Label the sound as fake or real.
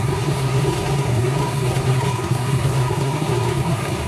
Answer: fake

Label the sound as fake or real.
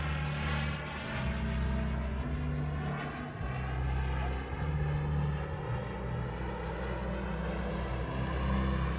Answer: real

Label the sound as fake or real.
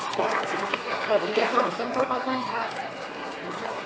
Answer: fake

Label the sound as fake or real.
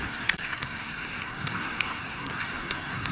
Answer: fake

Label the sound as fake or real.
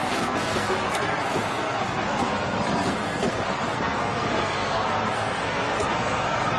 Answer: fake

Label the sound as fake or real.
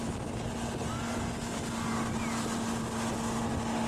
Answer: real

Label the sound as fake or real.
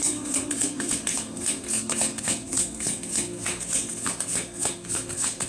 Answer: fake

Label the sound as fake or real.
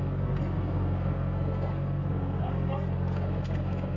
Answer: fake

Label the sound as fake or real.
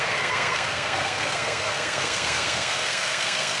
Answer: fake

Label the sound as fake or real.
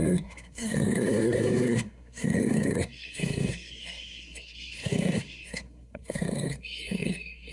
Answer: fake